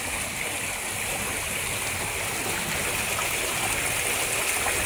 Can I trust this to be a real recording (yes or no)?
yes